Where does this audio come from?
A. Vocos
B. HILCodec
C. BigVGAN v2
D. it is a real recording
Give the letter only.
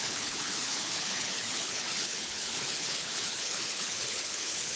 B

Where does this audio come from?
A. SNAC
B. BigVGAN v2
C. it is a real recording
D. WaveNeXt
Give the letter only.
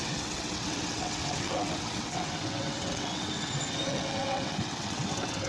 D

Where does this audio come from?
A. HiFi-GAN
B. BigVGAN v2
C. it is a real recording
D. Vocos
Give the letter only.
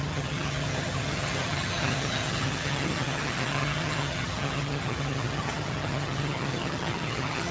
A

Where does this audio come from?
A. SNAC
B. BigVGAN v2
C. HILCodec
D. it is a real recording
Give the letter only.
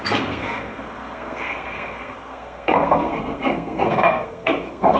A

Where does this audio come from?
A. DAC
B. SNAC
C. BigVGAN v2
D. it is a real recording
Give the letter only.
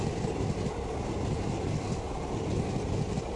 D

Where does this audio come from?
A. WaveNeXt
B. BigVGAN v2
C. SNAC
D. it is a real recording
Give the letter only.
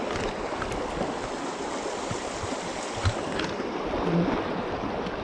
B